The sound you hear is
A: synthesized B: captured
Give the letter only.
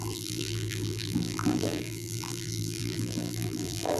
A